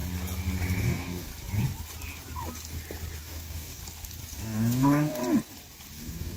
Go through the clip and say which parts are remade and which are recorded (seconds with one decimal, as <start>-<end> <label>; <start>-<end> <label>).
0.0-0.8 recorded; 0.8-1.3 remade; 1.3-3.2 recorded; 3.2-3.8 remade; 3.8-4.4 recorded; 4.4-5.2 remade; 5.2-6.0 recorded; 6.0-6.4 remade